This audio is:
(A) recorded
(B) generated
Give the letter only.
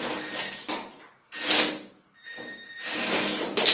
A